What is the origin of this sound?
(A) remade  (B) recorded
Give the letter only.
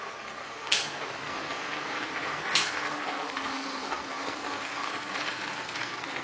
A